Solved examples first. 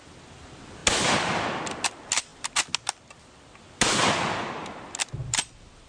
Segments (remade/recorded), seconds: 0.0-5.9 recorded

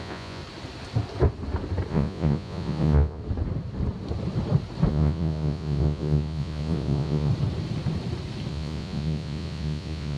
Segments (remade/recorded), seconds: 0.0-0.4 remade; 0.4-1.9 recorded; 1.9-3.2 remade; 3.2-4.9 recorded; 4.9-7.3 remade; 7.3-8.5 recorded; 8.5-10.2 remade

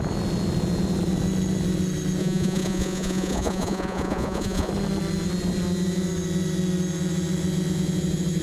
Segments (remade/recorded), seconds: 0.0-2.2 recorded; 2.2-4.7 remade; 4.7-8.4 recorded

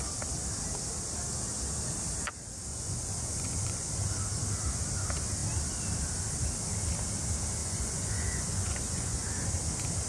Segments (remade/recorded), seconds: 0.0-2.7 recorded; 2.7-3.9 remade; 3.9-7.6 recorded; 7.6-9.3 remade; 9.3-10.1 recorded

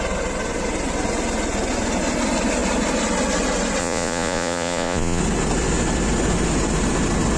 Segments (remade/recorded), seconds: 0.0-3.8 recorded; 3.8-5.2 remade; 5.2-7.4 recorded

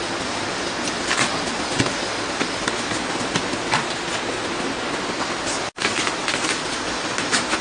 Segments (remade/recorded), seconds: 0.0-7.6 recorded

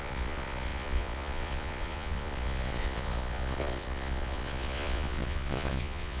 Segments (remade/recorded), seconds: 0.0-6.2 remade

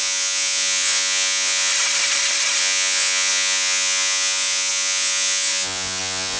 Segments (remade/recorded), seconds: 0.0-1.7 remade; 1.7-2.6 recorded; 2.6-6.4 remade